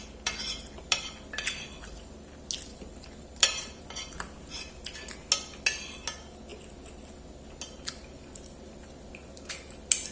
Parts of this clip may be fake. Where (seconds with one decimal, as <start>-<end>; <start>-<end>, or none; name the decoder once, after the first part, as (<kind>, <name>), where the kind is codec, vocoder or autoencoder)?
2.7-3.8 (vocoder, BigVGAN v2)